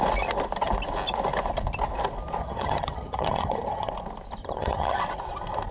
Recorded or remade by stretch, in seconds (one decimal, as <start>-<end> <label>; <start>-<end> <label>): 0.0-2.4 recorded; 2.4-3.9 remade; 3.9-4.4 recorded; 4.4-5.0 remade; 5.0-5.7 recorded